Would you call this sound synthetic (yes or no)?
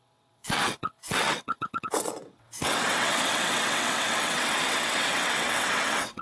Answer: yes